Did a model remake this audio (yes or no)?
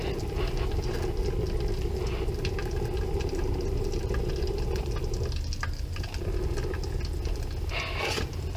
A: no